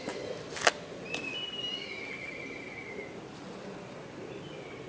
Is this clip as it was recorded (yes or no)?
yes